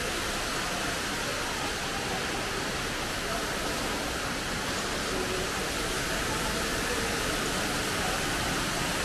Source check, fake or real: real